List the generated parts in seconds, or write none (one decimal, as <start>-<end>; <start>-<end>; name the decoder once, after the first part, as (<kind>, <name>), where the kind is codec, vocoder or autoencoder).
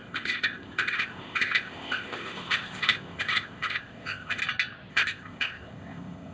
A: 0.0-4.4 (codec, ZipCodec); 4.9-6.3